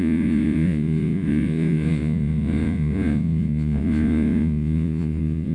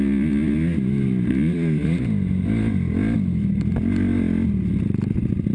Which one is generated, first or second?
first